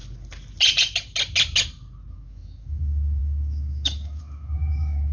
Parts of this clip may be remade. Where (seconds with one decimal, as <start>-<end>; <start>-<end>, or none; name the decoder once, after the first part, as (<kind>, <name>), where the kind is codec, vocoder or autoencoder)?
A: 2.1-5.1 (autoencoder, DAC-VAE)